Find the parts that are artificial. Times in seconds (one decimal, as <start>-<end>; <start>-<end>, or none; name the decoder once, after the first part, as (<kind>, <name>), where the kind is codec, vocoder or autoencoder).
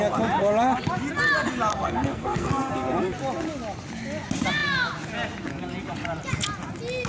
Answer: 1.7-2.7 (codec, SNAC)